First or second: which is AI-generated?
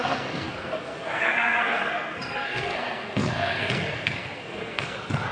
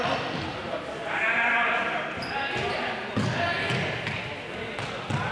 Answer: first